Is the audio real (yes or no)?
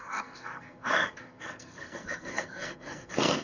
no